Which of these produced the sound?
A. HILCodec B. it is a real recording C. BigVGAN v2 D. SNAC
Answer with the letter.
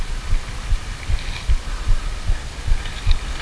B